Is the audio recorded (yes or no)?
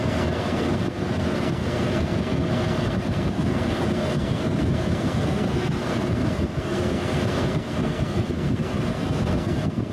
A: no